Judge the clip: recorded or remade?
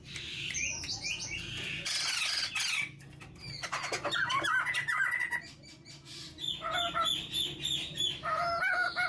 recorded